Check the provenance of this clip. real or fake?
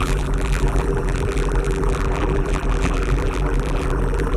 fake